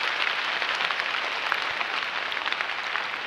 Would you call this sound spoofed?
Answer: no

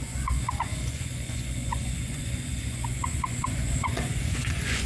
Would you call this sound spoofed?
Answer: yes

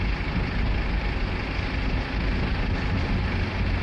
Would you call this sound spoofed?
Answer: no